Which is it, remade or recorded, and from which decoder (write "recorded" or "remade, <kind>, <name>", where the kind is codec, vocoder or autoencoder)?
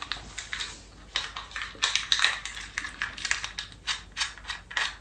recorded